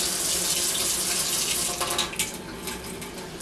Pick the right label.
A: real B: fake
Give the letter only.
A